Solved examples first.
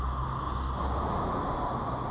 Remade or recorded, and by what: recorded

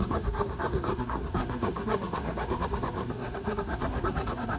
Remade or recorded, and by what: remade, codec, SNAC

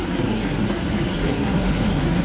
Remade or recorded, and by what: remade, codec, SNAC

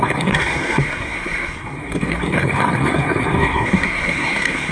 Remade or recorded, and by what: remade, codec, SNAC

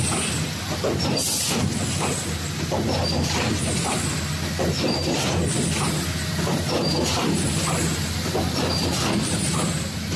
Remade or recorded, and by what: recorded